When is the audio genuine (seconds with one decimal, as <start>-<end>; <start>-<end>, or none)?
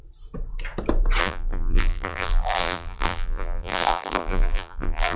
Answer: 0.0-1.2